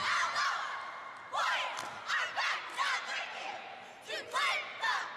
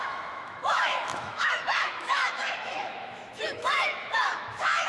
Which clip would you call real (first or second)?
first